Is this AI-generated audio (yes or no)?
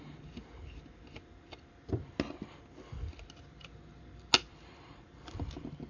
no